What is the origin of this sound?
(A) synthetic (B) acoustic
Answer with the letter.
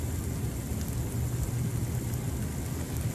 B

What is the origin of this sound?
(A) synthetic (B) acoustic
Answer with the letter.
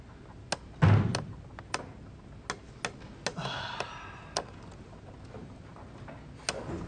B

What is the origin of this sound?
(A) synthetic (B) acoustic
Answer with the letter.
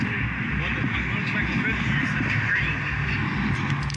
B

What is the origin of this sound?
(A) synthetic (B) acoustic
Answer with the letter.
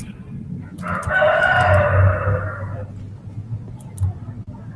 B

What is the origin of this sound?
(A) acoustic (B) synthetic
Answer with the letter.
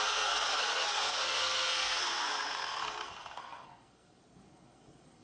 B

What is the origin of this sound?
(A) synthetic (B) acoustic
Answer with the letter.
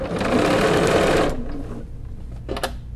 B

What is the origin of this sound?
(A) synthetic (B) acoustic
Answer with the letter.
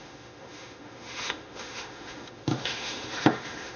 A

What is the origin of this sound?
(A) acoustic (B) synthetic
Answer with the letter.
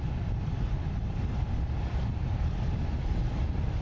A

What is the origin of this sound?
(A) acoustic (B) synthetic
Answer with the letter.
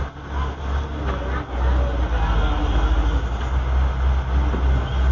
A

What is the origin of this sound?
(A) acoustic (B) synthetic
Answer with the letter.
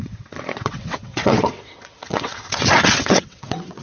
B